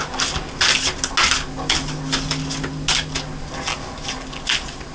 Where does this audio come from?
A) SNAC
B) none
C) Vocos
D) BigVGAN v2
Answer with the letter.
B